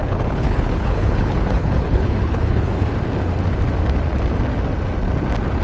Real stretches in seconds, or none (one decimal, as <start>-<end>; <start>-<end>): 2.9-5.6